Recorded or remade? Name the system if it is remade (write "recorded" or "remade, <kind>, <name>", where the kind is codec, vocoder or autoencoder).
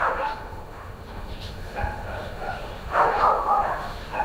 remade, autoencoder, DAC-VAE